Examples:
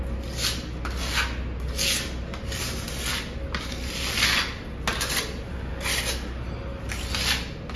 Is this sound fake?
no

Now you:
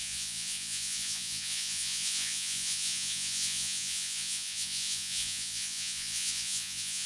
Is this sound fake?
yes